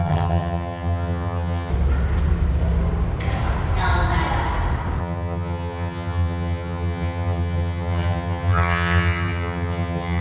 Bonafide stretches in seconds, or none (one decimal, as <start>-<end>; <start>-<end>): 1.7-5.0